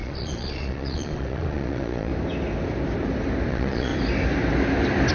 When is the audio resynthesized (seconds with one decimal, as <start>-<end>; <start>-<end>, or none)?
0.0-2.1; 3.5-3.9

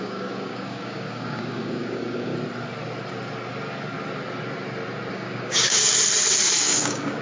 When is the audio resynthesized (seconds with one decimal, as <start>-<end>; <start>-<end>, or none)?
0.0-2.3; 5.1-5.8; 6.6-7.2

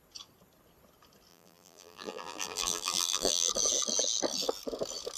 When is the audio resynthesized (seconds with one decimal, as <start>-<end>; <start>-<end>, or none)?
1.3-3.5

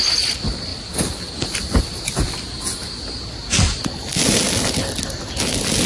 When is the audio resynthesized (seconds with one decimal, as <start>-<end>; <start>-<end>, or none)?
none

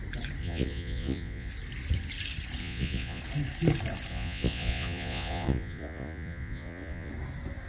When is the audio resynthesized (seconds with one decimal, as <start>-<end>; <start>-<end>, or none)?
0.4-1.5; 2.6-3.2; 4.1-7.1